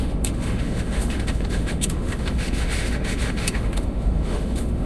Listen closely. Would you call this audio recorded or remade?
remade